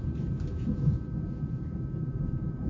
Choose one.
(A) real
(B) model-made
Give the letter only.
B